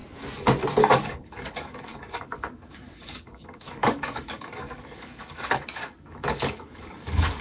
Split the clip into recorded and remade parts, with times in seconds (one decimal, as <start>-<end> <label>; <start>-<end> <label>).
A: 0.0-0.8 recorded; 0.8-7.4 remade